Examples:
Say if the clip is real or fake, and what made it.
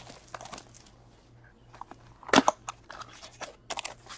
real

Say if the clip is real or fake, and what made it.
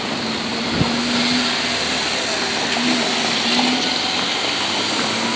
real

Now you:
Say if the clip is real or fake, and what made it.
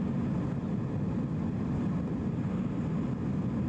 real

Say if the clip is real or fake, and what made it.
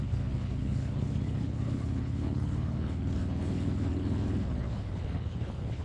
fake, codec, HILCodec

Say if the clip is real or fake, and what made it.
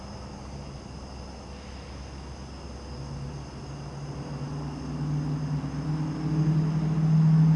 real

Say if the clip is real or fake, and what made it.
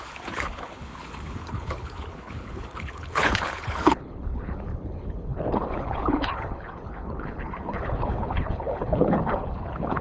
fake, codec, HILCodec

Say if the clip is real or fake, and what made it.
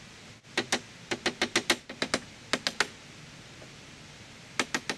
real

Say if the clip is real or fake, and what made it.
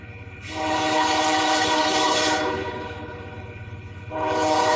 fake, codec, HILCodec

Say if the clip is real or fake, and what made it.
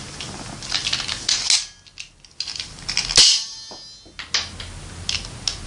real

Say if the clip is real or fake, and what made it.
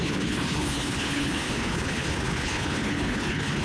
fake, codec, HILCodec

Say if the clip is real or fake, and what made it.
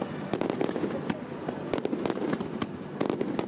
real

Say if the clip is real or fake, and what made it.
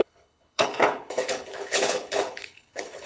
fake, codec, HILCodec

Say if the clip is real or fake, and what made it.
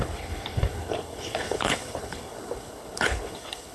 fake, codec, HILCodec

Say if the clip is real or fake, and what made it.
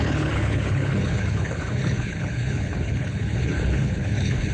fake, codec, HILCodec